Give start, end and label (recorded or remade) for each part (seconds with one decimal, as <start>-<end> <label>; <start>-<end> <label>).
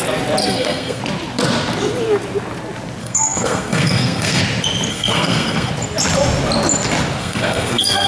0.0-0.4 recorded; 0.4-1.0 remade; 1.0-3.0 recorded; 3.0-4.4 remade; 4.4-4.9 recorded; 4.9-5.7 remade; 5.7-7.2 recorded; 7.2-8.1 remade